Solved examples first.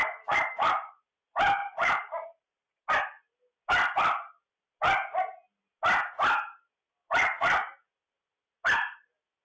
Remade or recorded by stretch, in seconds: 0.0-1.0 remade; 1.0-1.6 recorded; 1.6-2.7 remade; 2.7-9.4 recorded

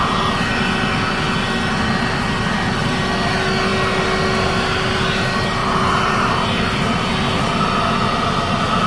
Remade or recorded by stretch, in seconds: 0.0-5.6 recorded; 5.6-7.1 remade; 7.1-8.9 recorded

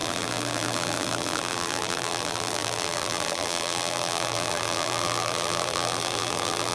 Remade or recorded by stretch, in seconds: 0.0-6.7 remade

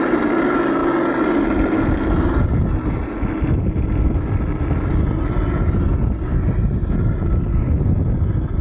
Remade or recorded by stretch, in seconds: 0.0-6.8 recorded; 6.8-7.8 remade; 7.8-8.6 recorded

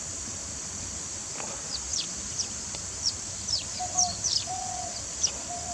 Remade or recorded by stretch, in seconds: 0.0-1.9 recorded; 1.9-5.3 remade; 5.3-5.7 recorded

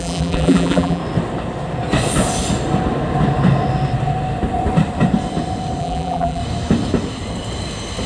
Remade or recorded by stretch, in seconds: 0.0-1.0 remade; 1.0-5.8 recorded; 5.8-6.4 remade; 6.4-8.1 recorded

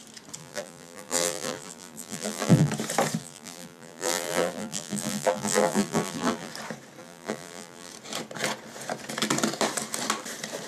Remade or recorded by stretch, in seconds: 0.0-0.4 recorded; 0.4-2.7 remade; 2.7-3.2 recorded; 3.2-6.5 remade; 6.5-7.0 recorded; 7.0-7.9 remade; 7.9-10.7 recorded